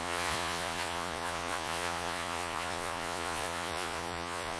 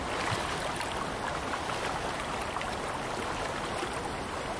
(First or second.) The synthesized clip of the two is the first